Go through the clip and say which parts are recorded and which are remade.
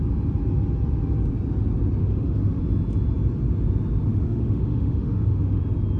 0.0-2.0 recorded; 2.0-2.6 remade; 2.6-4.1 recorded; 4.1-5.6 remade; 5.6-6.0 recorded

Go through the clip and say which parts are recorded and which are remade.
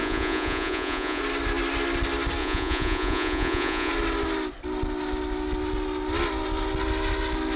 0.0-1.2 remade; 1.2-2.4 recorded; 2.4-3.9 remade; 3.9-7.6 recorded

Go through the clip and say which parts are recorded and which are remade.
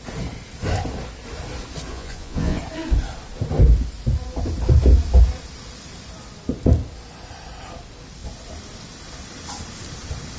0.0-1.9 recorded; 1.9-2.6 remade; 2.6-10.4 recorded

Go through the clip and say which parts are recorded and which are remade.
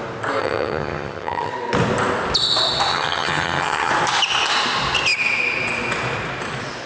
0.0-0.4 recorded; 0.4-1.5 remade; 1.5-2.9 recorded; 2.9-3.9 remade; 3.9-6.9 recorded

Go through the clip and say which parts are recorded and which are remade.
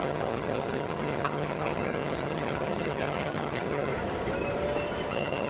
0.0-3.9 remade; 3.9-5.1 recorded; 5.1-5.5 remade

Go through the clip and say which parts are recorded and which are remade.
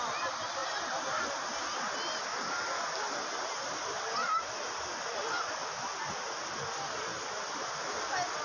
0.0-8.4 recorded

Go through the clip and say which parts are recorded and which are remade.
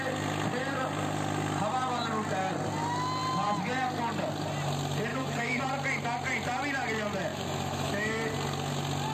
0.0-5.1 recorded; 5.1-5.6 remade; 5.6-7.3 recorded; 7.3-8.2 remade; 8.2-9.1 recorded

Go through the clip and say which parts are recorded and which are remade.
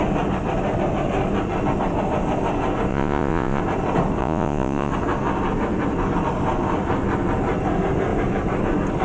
0.0-2.9 recorded; 2.9-3.6 remade; 3.6-4.2 recorded; 4.2-4.9 remade; 4.9-9.0 recorded